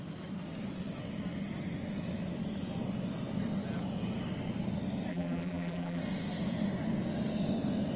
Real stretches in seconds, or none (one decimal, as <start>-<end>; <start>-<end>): 0.0-5.1; 6.0-8.0